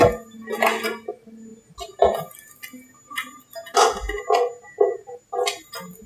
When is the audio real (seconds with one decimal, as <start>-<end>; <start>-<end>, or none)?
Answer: 0.0-6.1